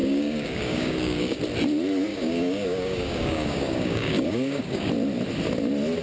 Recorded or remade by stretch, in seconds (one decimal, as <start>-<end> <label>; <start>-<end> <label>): 0.0-1.4 remade; 1.4-2.1 recorded; 2.1-4.9 remade; 4.9-6.0 recorded